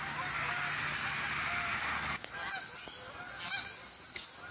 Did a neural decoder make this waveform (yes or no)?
no